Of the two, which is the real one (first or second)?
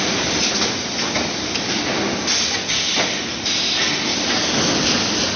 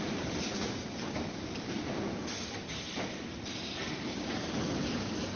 first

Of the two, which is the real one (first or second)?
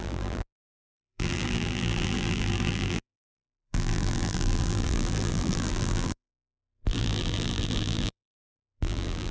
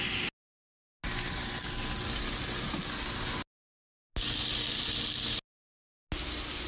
second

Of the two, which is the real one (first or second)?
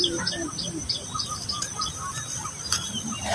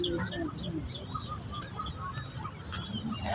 second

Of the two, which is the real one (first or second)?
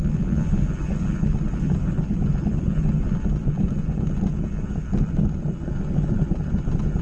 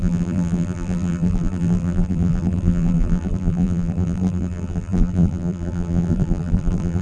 first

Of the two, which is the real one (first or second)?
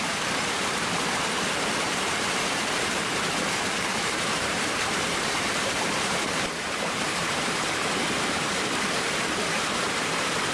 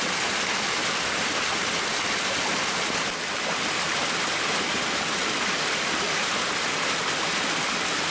second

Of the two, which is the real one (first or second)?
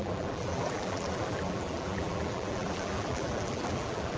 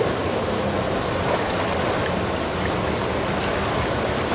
second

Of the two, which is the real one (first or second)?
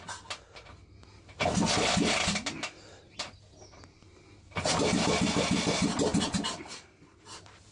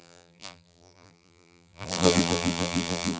first